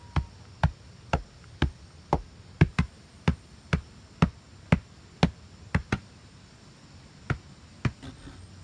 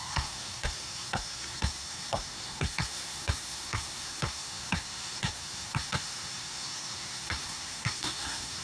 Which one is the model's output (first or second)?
second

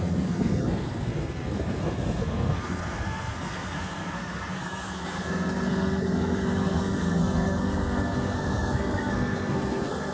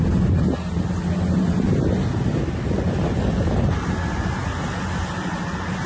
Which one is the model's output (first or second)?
first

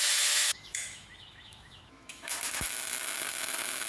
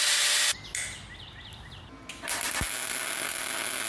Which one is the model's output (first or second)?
first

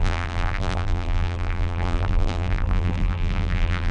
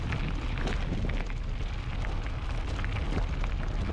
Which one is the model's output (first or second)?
first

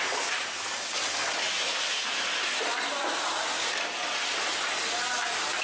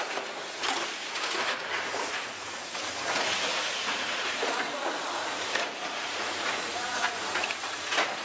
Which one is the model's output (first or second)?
second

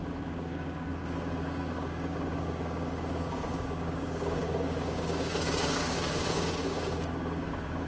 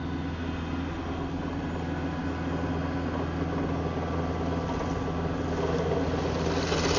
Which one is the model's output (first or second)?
first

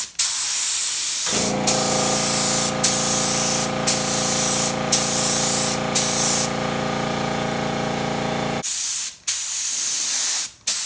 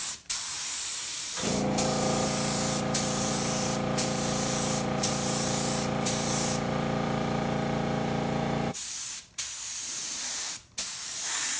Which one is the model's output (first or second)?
second